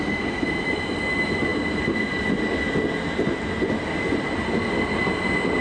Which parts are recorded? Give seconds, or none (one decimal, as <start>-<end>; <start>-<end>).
0.0-5.6